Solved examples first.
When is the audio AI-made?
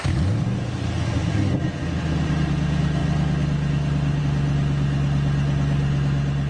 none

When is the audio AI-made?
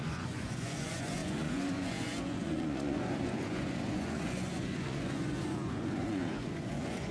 0.0-7.1 (vocoder, Vocos)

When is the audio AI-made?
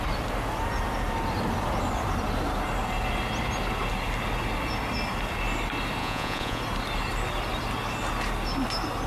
6.0-6.6 (vocoder, Vocos)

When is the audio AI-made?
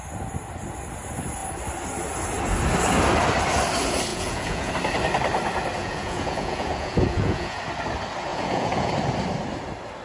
4.1-4.7 (vocoder, Vocos); 5.8-7.6; 8.3-8.9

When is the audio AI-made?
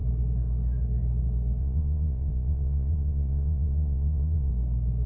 1.6-4.5 (vocoder, Vocos)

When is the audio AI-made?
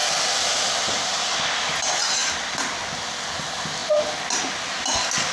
none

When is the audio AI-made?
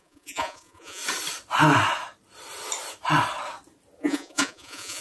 0.0-1.0 (vocoder, Vocos); 4.0-5.0